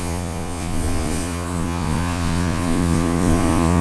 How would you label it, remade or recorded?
remade